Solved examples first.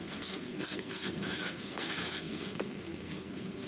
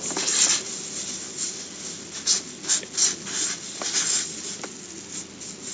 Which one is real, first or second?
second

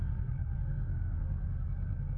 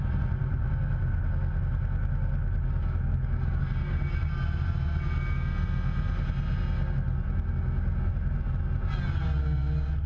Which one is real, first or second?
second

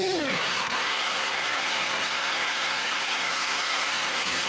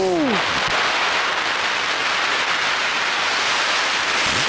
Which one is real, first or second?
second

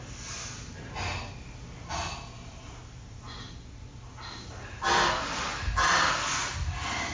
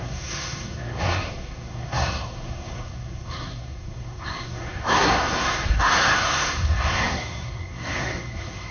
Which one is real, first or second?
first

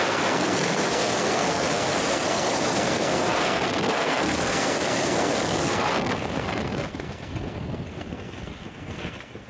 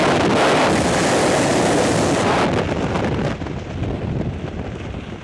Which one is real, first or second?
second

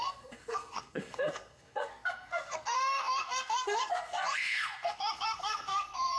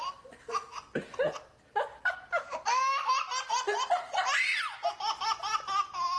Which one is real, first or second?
second